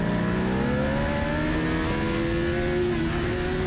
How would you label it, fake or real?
real